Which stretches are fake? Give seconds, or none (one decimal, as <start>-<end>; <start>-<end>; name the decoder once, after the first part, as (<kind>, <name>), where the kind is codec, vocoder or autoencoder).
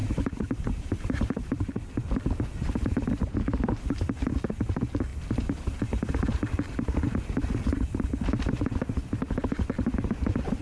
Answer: 0.0-1.7 (vocoder, BigVGAN v2)